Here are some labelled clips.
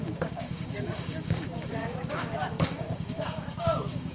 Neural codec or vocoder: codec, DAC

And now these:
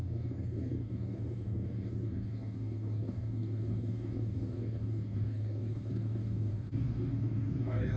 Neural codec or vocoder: codec, DAC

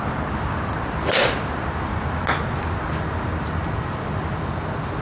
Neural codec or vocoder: none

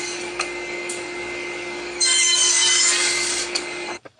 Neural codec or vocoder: codec, DAC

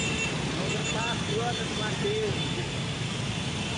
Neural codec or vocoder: none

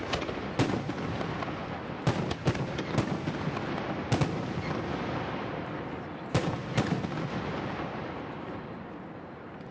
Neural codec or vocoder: none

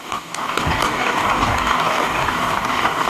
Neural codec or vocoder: codec, DAC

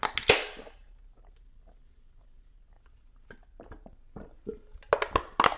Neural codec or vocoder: none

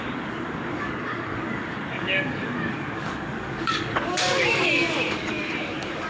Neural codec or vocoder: codec, DAC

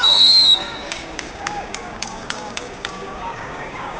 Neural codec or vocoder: codec, DAC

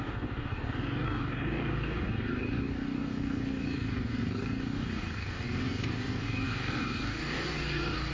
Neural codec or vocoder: codec, DAC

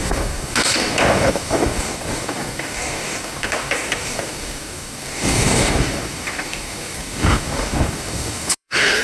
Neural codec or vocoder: codec, DAC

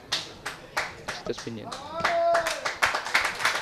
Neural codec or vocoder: none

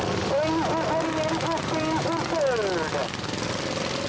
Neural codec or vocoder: none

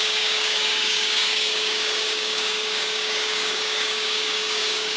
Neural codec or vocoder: codec, DAC